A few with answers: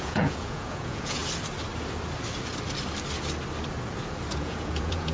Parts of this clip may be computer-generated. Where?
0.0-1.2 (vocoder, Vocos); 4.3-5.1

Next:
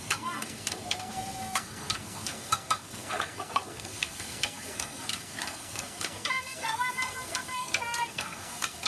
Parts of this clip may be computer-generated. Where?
0.0-8.9 (codec, SNAC)

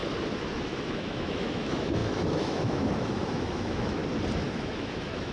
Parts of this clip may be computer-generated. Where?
0.6-4.0 (autoencoder, DAC-VAE); 4.5-5.3

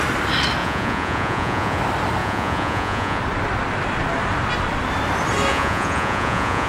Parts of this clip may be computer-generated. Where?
0.6-1.8 (vocoder, Vocos); 2.2-3.2; 5.5-6.7

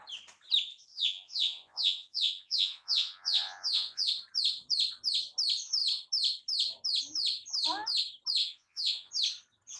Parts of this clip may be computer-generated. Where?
0.9-4.1 (vocoder, Vocos); 8.4-9.1

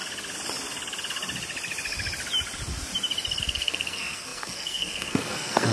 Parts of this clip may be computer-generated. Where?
3.4-5.7 (codec, SNAC)

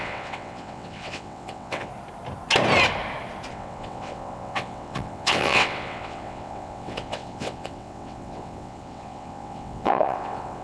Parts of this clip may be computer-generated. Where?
0.0-1.9 (vocoder, WaveNeXt); 3.5-10.6